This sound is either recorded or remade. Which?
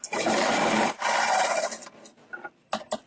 recorded